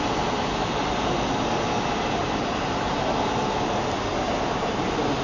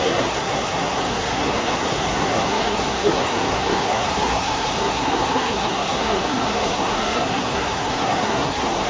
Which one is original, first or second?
first